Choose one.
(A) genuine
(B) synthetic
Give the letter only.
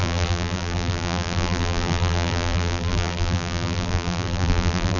B